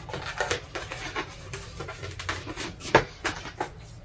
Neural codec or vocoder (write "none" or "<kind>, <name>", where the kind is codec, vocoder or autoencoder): none